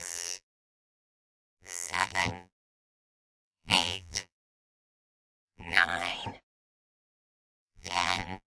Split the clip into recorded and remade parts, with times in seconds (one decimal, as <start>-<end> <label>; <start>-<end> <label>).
0.0-6.1 remade; 6.1-6.7 recorded; 6.7-8.5 remade